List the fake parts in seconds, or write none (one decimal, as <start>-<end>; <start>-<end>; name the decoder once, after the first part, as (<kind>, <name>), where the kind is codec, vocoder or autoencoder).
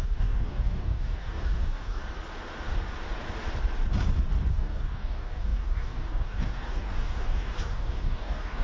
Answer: 0.0-2.0 (codec, DAC); 4.5-8.6